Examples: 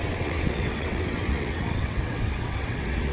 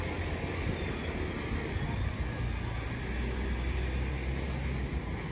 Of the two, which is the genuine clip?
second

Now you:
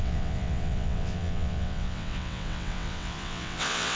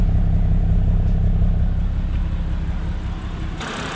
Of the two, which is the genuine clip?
second